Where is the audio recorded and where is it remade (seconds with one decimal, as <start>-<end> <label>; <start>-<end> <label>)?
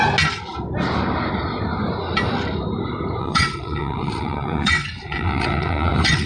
0.0-3.2 recorded; 3.2-6.3 remade